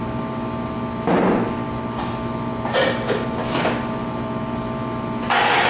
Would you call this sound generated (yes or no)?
no